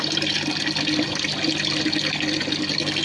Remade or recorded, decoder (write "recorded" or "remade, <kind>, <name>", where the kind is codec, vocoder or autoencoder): recorded